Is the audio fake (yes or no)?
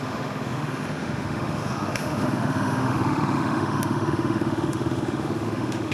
yes